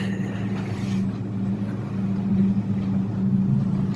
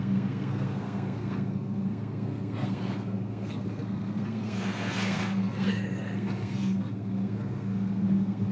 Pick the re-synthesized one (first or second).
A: second